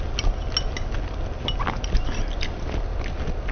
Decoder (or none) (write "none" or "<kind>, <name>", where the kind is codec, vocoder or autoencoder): none